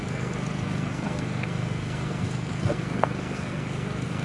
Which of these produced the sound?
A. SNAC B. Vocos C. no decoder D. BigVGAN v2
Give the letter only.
A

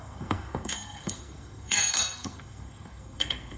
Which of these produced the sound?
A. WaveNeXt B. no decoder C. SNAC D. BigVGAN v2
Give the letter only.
C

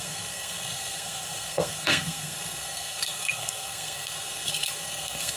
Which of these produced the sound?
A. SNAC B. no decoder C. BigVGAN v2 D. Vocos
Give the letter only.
A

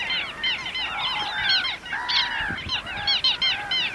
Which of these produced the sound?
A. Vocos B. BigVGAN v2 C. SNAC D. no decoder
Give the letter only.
D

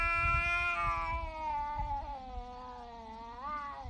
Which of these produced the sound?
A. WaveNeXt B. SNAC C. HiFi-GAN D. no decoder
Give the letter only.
D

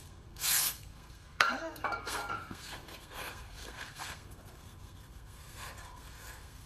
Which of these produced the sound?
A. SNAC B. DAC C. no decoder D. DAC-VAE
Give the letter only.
A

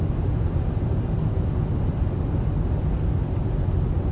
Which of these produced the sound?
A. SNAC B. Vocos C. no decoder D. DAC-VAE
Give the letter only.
C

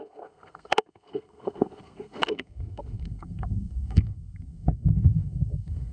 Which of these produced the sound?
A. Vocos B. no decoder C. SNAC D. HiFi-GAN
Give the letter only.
C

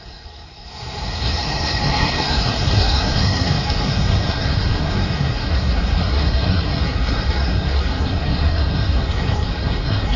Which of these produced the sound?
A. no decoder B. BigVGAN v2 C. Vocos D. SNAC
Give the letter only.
D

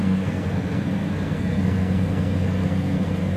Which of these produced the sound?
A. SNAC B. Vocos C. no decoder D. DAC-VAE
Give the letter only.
A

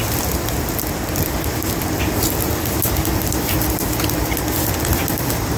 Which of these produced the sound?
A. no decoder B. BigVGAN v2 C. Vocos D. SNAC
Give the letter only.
A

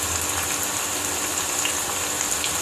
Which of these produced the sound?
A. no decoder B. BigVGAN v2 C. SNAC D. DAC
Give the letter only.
A